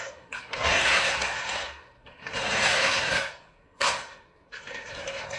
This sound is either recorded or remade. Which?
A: remade